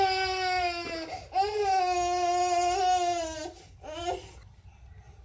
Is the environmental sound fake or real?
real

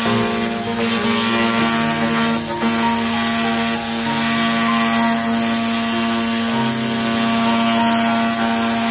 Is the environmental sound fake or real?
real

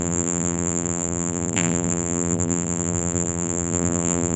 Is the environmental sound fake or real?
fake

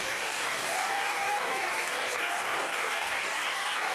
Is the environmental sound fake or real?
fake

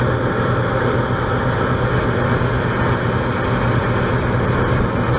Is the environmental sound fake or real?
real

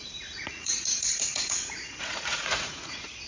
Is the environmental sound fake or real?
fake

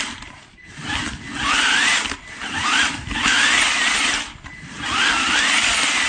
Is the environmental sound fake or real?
real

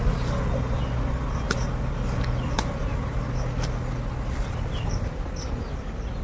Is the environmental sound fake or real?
real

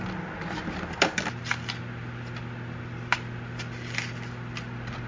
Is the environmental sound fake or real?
real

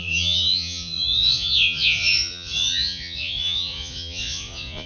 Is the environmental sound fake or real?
fake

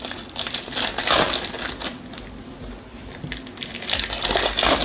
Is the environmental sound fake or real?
real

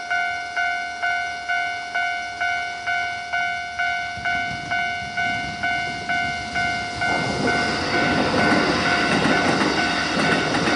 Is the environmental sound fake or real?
real